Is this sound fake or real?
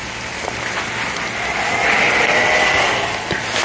real